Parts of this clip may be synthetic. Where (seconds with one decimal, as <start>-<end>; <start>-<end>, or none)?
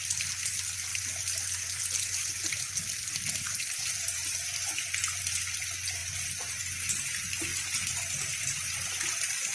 none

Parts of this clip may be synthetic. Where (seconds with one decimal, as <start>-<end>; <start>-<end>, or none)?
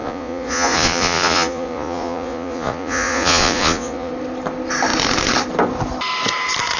0.0-4.1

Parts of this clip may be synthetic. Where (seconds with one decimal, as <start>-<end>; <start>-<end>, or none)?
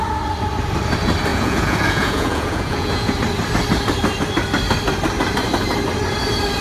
1.3-3.1